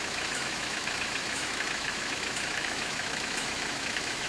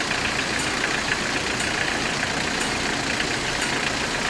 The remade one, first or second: first